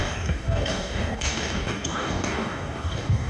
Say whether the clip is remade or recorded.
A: remade